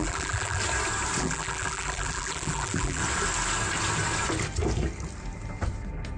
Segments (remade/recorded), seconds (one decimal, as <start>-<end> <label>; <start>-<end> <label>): 0.0-0.6 remade; 0.6-1.2 recorded; 1.2-3.0 remade; 3.0-6.2 recorded